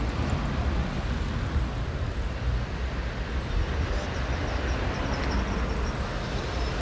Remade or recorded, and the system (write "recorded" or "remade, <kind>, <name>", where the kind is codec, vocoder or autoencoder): recorded